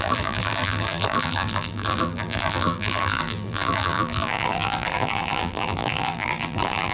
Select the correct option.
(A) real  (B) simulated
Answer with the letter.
B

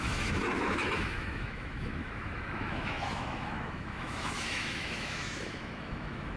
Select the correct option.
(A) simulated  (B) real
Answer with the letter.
A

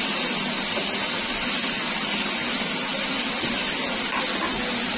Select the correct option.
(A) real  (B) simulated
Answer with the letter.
A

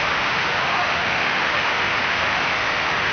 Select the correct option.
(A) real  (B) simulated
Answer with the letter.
B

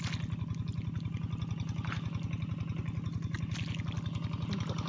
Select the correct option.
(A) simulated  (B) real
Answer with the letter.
B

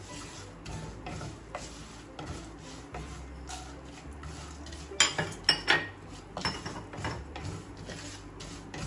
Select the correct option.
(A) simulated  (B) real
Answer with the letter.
B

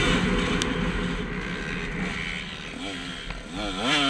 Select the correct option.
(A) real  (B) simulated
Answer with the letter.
A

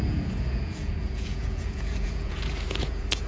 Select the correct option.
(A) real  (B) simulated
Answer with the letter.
B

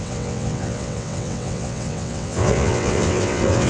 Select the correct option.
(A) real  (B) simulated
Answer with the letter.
B